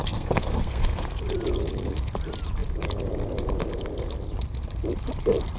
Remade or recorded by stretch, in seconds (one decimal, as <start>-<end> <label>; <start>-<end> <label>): 0.0-1.2 remade; 1.2-5.6 recorded